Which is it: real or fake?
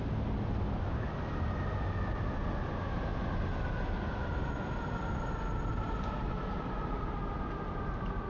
real